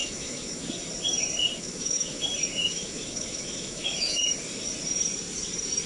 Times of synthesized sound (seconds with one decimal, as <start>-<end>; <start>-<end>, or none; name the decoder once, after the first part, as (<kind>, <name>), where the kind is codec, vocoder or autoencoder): 0.0-0.7 (autoencoder, DAC-VAE); 1.5-2.2; 2.6-4.3